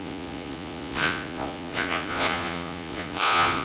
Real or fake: fake